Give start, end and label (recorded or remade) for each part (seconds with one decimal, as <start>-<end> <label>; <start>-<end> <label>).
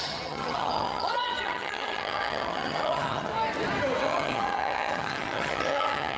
0.0-3.3 remade; 3.3-4.0 recorded; 4.0-6.2 remade